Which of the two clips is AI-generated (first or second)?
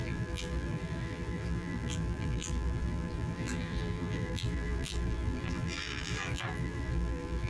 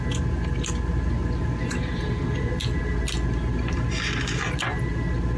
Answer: first